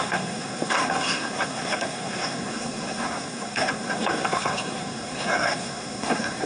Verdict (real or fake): fake